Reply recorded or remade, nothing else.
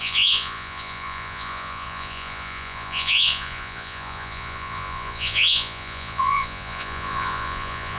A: remade